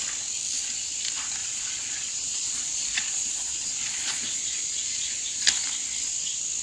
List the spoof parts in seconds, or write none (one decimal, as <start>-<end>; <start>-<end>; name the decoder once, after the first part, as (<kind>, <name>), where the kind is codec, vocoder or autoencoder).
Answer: 1.4-5.4 (vocoder, Vocos)